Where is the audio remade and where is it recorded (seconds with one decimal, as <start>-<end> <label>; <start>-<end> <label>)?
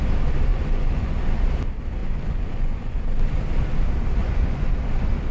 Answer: 0.0-0.5 recorded; 0.5-1.2 remade; 1.2-2.0 recorded; 2.0-3.0 remade; 3.0-4.2 recorded; 4.2-4.7 remade; 4.7-5.3 recorded